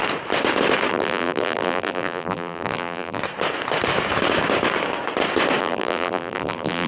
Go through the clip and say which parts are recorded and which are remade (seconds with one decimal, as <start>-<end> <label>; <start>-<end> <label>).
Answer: 0.0-0.9 recorded; 0.9-3.2 remade; 3.2-5.6 recorded; 5.6-6.9 remade